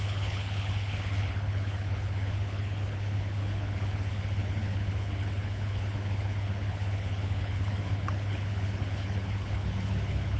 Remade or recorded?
remade